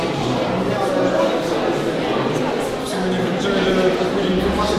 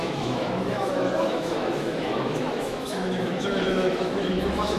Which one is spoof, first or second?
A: second